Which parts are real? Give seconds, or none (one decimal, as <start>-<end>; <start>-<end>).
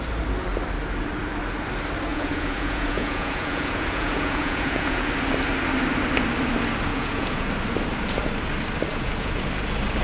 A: 0.0-2.1; 5.1-6.9; 7.5-8.9; 9.4-10.0